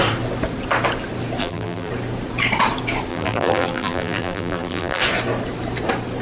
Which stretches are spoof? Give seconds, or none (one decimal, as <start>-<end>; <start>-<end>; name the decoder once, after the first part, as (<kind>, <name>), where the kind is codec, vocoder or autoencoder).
1.4-1.9 (vocoder, BigVGAN v2); 3.1-5.0